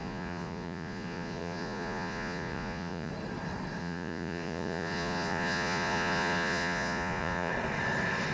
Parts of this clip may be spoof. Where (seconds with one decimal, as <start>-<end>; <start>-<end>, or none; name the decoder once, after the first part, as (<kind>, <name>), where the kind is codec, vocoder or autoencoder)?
0.0-3.1 (vocoder, Vocos); 3.8-7.5